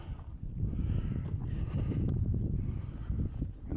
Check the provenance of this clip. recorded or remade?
recorded